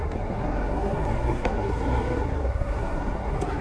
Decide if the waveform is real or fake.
fake